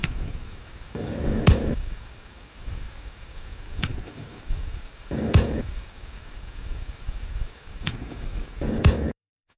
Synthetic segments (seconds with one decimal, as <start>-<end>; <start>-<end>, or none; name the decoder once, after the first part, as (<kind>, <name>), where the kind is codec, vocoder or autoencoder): 0.0-9.6 (codec, DAC)